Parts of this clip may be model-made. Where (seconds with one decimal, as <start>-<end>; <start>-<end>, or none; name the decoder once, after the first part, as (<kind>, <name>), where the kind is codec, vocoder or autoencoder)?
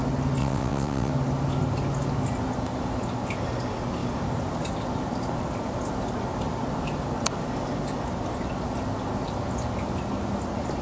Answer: 0.4-1.1 (vocoder, WaveNeXt)